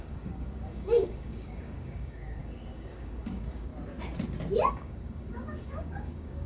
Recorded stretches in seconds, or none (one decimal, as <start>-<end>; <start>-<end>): 3.7-4.7